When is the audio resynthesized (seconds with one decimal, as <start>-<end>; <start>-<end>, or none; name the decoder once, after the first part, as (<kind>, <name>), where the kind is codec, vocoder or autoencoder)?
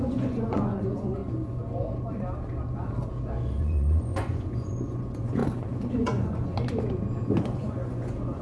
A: 0.0-1.2 (vocoder, Vocos); 3.6-5.4; 5.9-6.5; 7.4-8.4